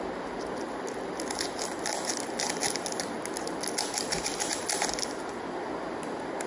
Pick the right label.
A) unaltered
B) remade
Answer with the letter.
A